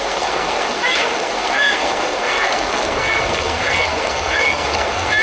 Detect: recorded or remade remade